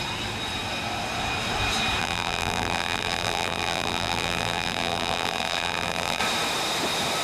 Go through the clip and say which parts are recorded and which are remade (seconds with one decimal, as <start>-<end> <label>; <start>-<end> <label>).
0.0-2.0 recorded; 2.0-6.2 remade; 6.2-7.2 recorded